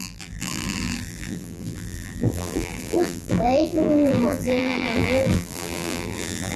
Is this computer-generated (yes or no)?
yes